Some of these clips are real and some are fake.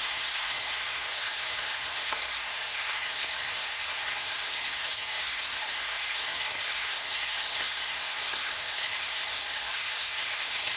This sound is fake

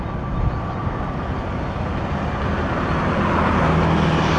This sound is real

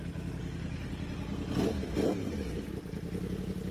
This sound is real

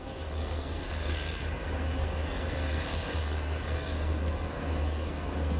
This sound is fake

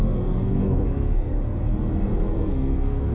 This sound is fake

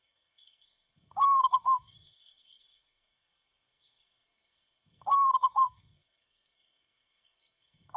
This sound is fake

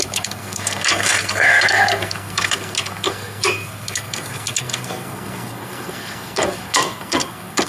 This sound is fake